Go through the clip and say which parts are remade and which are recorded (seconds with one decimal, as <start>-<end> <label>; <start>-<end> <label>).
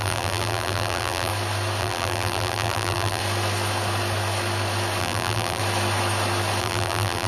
0.0-1.3 remade; 1.3-1.8 recorded; 1.8-3.2 remade; 3.2-5.0 recorded; 5.0-5.6 remade; 5.6-6.6 recorded; 6.6-7.3 remade